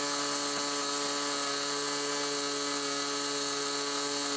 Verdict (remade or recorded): recorded